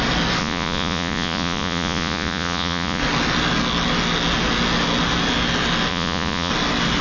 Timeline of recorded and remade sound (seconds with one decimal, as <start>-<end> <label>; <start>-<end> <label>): 0.0-0.4 recorded; 0.4-3.0 remade; 3.0-5.9 recorded; 5.9-6.5 remade; 6.5-7.0 recorded

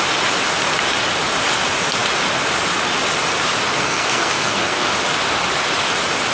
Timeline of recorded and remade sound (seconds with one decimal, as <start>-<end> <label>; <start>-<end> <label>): 0.0-3.7 recorded; 3.7-4.9 remade; 4.9-6.3 recorded

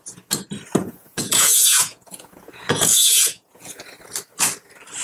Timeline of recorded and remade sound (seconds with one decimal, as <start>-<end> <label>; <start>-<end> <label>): 0.0-0.8 recorded; 0.8-3.8 remade; 3.8-5.0 recorded

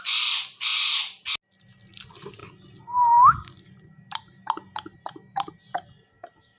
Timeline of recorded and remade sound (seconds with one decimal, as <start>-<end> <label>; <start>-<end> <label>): 0.0-6.6 recorded

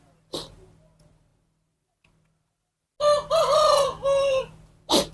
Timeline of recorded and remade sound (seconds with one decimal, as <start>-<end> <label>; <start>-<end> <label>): 0.0-5.1 recorded

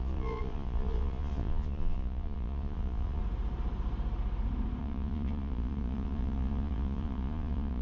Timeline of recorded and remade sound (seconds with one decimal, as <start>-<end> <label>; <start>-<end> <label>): 0.0-3.2 remade; 3.2-4.8 recorded; 4.8-7.8 remade

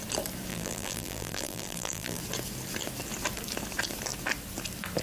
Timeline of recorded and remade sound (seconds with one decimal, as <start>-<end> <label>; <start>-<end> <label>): 0.0-0.5 recorded; 0.5-2.2 remade; 2.2-5.0 recorded